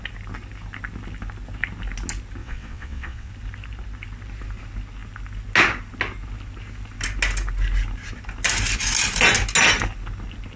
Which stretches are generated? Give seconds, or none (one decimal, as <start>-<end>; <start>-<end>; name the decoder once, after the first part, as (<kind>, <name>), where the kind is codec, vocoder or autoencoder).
2.4-3.3 (vocoder, WaveNeXt)